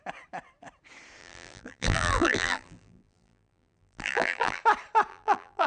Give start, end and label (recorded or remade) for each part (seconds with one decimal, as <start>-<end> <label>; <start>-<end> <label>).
0.0-1.2 recorded; 1.2-4.6 remade; 4.6-5.1 recorded; 5.1-5.7 remade